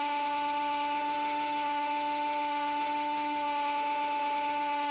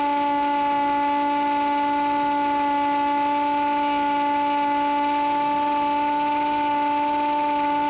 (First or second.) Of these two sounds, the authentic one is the second